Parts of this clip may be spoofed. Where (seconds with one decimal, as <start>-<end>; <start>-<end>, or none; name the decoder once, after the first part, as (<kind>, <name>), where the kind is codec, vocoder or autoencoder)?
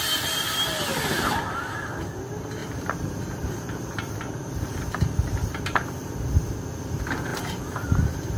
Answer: 2.6-5.9 (vocoder, BigVGAN v2); 7.3-8.4